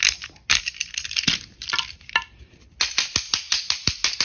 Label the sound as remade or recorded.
recorded